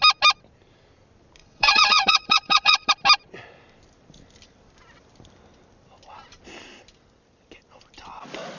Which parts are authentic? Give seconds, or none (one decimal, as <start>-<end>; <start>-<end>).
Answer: 0.0-1.4; 2.9-8.6

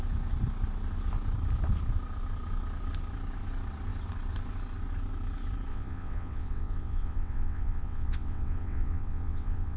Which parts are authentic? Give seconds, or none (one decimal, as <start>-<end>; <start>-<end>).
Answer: 0.0-5.7